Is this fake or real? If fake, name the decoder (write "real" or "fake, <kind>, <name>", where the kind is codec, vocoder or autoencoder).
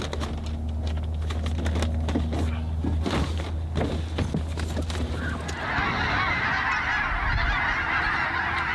real